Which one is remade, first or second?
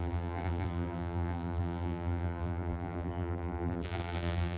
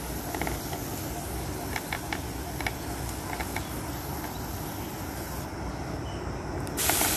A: first